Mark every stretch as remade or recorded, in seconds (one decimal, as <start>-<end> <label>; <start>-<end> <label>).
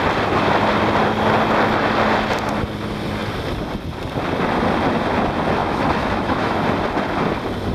0.0-5.6 recorded; 5.6-6.6 remade; 6.6-7.7 recorded